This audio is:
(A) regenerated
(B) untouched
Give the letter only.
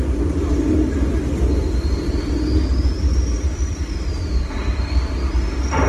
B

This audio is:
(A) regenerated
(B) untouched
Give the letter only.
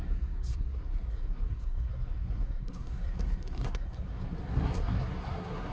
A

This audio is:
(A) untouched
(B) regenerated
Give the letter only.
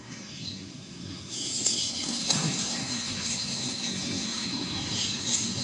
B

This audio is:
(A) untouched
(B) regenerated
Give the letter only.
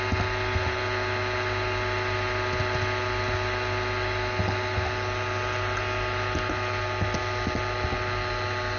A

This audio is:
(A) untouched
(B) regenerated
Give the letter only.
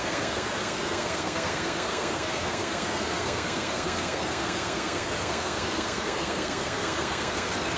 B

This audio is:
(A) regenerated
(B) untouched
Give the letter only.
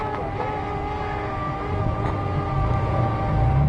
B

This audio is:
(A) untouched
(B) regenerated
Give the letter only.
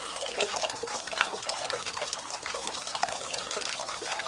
B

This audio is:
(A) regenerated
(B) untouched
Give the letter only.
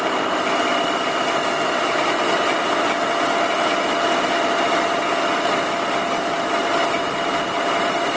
B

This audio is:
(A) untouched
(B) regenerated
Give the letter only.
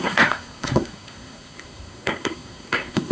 B